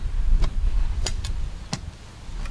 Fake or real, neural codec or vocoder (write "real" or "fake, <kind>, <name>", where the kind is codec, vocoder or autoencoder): real